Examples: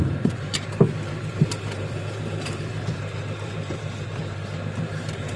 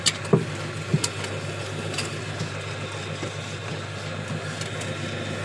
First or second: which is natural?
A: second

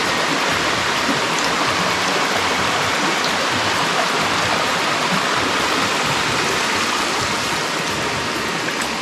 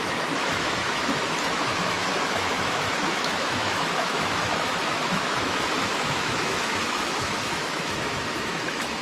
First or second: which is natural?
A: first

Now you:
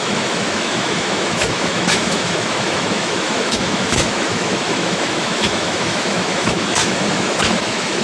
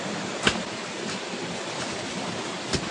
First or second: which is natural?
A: second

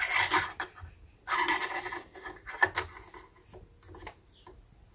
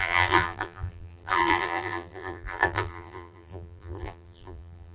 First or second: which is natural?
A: first